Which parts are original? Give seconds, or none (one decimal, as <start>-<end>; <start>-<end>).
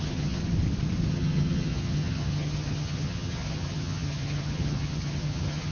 0.4-1.1